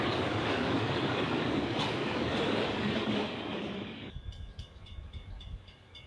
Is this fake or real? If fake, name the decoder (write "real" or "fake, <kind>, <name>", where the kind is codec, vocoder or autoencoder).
fake, codec, DAC